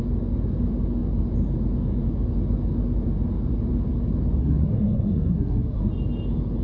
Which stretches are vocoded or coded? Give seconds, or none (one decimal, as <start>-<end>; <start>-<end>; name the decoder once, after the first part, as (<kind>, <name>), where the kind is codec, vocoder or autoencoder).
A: 4.4-5.9 (codec, SNAC)